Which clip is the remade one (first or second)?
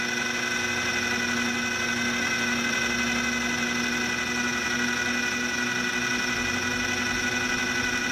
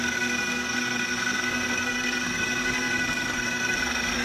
second